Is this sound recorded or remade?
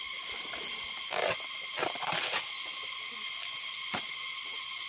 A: recorded